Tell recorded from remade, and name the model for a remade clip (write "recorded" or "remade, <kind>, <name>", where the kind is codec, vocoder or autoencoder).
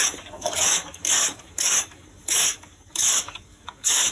remade, codec, DAC